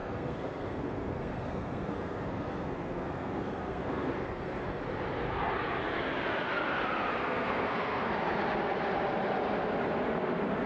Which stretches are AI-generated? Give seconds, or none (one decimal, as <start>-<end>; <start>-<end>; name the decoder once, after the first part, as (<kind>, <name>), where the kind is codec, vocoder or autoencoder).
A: 0.0-4.8 (codec, SNAC); 7.2-8.1